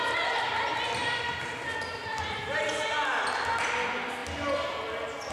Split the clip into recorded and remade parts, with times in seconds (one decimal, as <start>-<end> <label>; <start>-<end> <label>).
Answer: 0.0-5.3 recorded